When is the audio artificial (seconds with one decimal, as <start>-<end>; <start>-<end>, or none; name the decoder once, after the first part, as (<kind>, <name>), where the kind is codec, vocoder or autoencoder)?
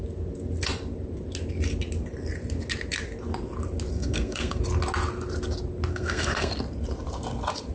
3.9-4.6 (codec, SNAC); 5.9-6.5